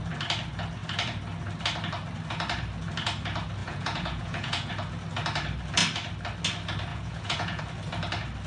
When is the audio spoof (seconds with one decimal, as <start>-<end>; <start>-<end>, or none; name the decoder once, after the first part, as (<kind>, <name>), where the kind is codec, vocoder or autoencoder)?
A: 3.6-4.7 (vocoder, Vocos); 6.9-7.6